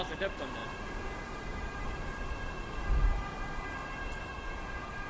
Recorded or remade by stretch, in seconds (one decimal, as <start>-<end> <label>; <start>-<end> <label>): 0.0-4.3 recorded; 4.3-5.1 remade